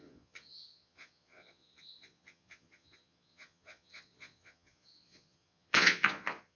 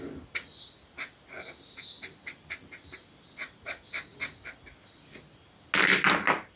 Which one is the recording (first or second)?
second